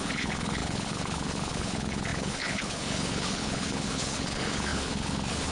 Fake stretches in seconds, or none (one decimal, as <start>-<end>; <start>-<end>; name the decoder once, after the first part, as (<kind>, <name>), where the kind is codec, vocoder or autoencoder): 0.0-5.5 (codec, HILCodec)